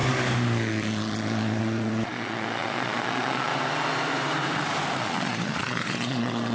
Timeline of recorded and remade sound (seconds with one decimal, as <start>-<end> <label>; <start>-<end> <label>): 0.0-1.6 recorded; 1.6-3.5 remade; 3.5-5.0 recorded; 5.0-6.5 remade